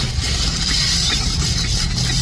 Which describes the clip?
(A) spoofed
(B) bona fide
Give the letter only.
B